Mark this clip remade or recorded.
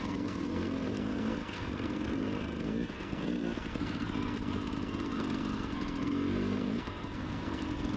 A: remade